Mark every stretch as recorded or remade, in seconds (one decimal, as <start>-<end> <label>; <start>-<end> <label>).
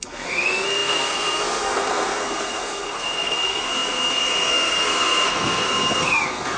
0.0-6.6 remade